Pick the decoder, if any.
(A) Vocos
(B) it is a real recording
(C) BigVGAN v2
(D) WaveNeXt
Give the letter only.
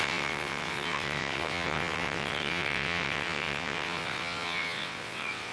D